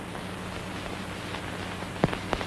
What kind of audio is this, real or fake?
real